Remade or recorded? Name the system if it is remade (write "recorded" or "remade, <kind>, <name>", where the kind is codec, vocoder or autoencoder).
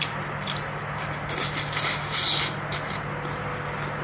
recorded